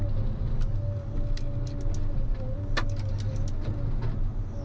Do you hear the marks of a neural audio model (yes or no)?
no